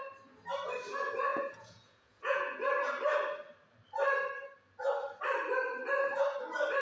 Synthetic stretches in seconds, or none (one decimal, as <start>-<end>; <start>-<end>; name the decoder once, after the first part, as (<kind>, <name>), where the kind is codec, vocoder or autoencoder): 1.3-2.7 (vocoder, Vocos)